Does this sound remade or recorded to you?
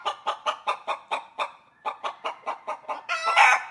remade